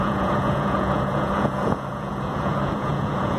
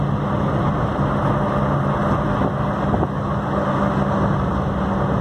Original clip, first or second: second